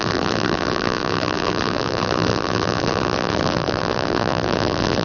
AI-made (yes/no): yes